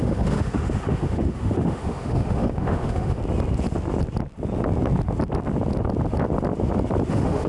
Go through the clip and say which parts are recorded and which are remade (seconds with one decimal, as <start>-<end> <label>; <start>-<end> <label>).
0.0-3.2 remade; 3.2-7.1 recorded; 7.1-7.5 remade